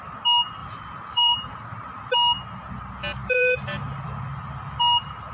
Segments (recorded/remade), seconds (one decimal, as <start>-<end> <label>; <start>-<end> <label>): 0.0-0.6 recorded; 0.6-2.0 remade; 2.0-3.2 recorded; 3.2-4.3 remade; 4.3-5.3 recorded